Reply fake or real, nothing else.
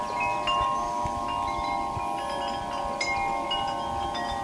real